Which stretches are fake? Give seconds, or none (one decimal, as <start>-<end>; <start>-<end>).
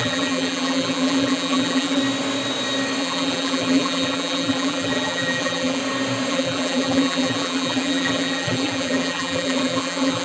0.0-2.0; 3.0-5.8; 6.3-10.2